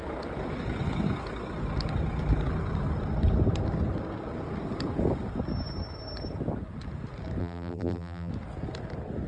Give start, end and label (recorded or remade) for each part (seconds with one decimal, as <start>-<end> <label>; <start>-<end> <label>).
0.0-7.4 recorded; 7.4-8.3 remade; 8.3-9.3 recorded